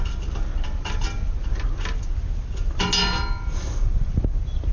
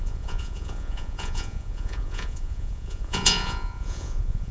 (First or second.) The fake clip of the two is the second